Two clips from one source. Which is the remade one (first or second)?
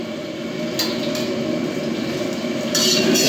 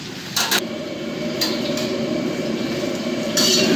second